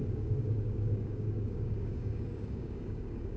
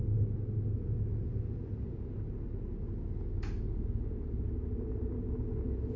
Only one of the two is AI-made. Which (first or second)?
first